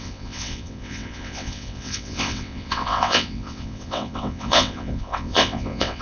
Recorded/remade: remade